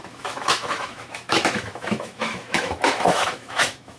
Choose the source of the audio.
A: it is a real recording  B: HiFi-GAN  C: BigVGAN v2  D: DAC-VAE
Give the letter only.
D